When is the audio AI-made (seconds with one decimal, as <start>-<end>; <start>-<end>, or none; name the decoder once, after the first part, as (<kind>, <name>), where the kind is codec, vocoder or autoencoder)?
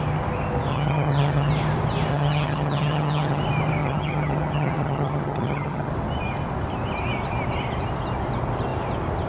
0.7-1.5 (vocoder, HiFi-GAN); 2.1-3.4; 3.8-5.9